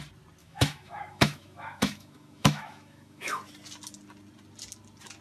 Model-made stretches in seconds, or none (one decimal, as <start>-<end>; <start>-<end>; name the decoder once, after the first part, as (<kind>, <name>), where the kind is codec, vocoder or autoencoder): 0.4-3.5 (autoencoder, DAC-VAE)